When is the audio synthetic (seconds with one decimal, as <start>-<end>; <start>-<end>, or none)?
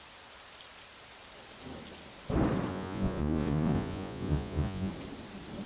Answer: 2.7-4.9